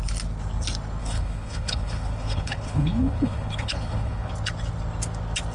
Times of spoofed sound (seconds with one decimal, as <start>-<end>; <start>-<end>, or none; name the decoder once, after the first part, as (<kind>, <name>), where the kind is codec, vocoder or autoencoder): 1.0-4.3 (codec, HILCodec)